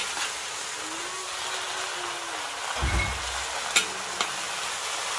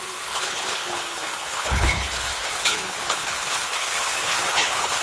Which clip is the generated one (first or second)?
second